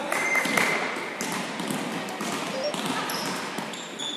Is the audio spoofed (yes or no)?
no